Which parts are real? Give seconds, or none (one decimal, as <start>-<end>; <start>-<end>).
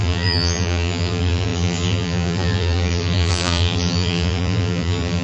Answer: none